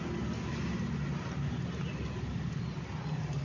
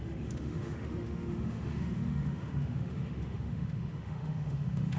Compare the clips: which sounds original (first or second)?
first